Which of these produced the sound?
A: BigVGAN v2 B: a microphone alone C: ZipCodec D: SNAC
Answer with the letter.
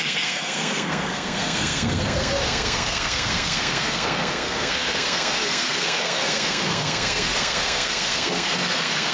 D